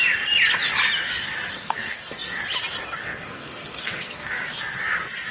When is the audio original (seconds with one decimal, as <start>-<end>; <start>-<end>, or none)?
0.0-1.5; 2.4-3.0; 4.3-5.3